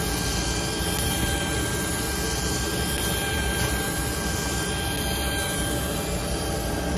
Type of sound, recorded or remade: recorded